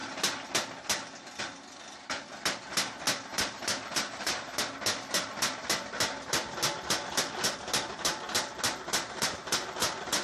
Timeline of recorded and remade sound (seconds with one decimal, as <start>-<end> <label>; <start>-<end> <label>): 0.0-3.3 recorded; 3.3-4.6 remade; 4.6-10.2 recorded